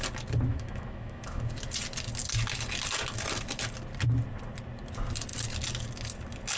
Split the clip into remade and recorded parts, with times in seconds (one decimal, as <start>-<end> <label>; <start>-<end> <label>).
0.0-0.5 recorded; 0.5-1.5 remade; 1.5-6.6 recorded